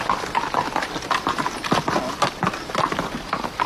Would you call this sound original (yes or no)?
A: no